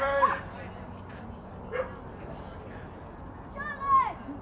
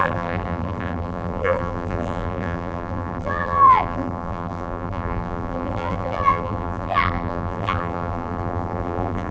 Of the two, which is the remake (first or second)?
second